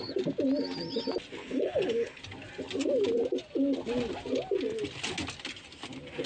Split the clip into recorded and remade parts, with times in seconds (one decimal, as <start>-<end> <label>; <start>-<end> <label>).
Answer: 0.0-1.4 recorded; 1.4-2.2 remade; 2.2-6.3 recorded